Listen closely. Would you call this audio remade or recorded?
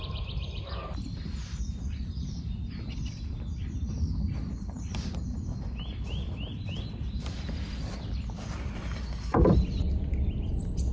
remade